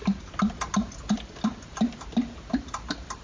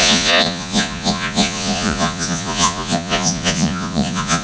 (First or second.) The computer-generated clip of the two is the second